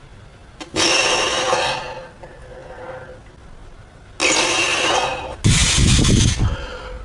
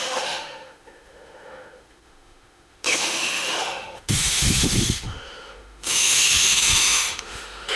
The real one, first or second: first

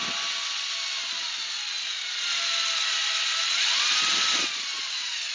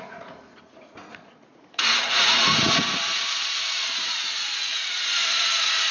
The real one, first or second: first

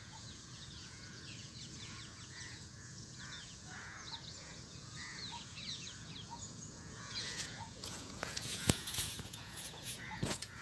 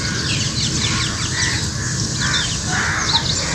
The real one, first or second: second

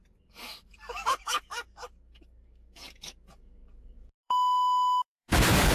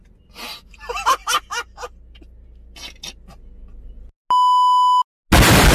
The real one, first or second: second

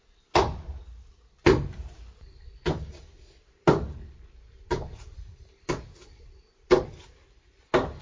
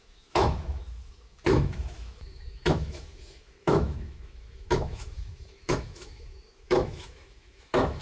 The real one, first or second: first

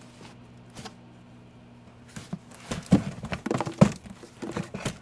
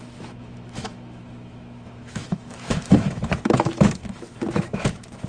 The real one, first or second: first